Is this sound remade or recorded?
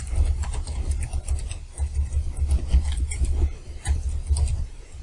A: recorded